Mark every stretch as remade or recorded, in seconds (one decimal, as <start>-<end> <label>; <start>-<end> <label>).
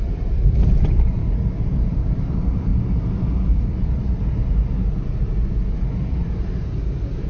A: 0.0-1.2 remade; 1.2-1.8 recorded; 1.8-2.7 remade; 2.7-3.6 recorded; 3.6-4.2 remade; 4.2-6.1 recorded; 6.1-7.3 remade